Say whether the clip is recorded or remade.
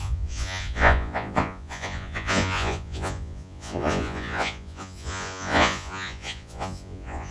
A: remade